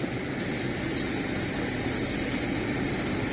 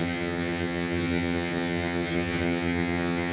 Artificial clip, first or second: second